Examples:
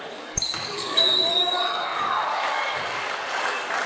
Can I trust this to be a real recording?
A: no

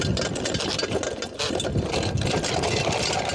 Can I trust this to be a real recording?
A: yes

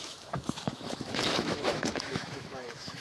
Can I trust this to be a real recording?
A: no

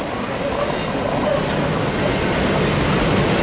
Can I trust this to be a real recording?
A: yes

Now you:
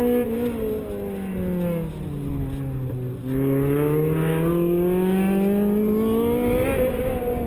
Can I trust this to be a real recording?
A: yes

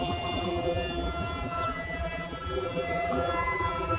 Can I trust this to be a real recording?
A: no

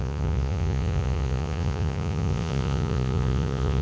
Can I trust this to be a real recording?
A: no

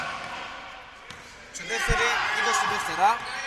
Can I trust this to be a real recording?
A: yes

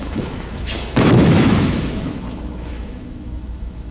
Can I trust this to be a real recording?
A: no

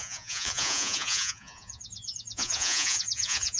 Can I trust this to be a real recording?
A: no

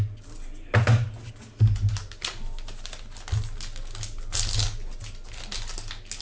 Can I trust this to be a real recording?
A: yes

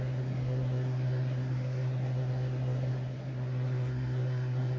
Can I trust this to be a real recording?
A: no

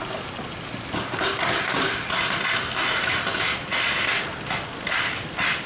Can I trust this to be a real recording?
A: yes